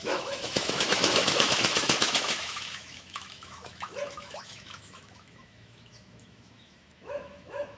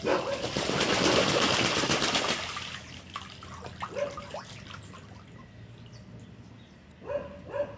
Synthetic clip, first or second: first